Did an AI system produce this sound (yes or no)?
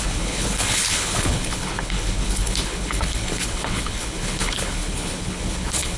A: yes